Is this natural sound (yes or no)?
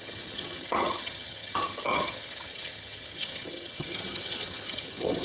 no